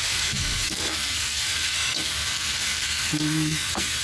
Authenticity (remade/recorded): remade